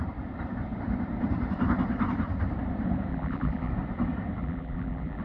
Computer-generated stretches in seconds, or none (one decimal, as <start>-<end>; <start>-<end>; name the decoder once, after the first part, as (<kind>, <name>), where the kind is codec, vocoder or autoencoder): 3.1-3.7 (vocoder, BigVGAN v2); 4.4-5.2